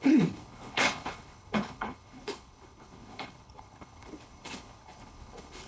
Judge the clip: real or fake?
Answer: fake